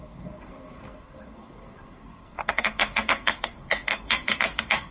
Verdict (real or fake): fake